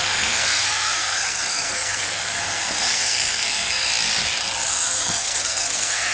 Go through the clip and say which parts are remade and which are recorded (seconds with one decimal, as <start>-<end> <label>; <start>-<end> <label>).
0.0-3.9 remade; 3.9-4.7 recorded; 4.7-6.1 remade